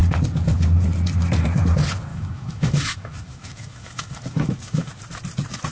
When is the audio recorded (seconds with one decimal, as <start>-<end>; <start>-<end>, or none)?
0.0-2.1; 4.9-5.7